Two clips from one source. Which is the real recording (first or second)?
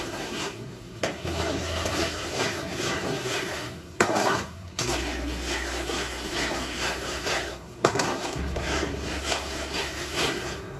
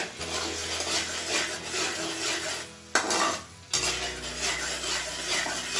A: second